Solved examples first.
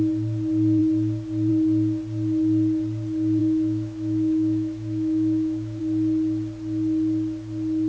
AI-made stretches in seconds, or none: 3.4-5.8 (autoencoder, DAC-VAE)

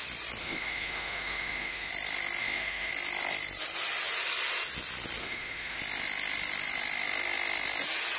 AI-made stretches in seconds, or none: 0.4-1.9 (autoencoder, DAC-VAE); 2.4-2.9; 5.2-5.8

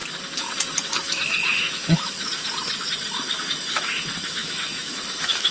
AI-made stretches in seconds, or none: 0.8-2.3 (autoencoder, DAC-VAE); 3.1-5.5